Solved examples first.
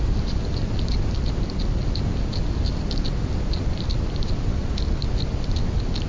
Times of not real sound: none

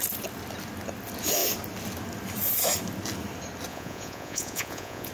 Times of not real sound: 3.7-5.1 (vocoder, Vocos)

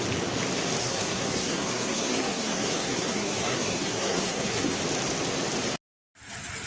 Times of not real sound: 0.8-4.8 (codec, SNAC)

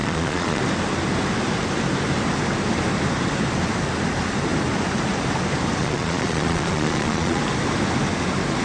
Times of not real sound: 0.0-0.6 (vocoder, Vocos); 5.8-7.4

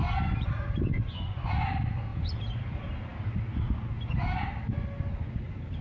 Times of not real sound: 0.9-1.5 (vocoder, Vocos)

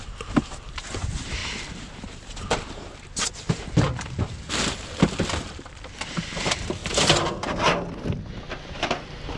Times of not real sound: 0.0-6.8 (vocoder, BigVGAN v2); 8.4-9.4

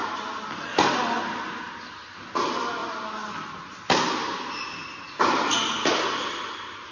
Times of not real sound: none

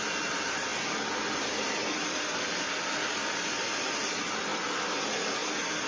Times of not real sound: none